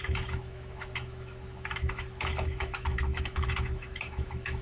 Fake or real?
fake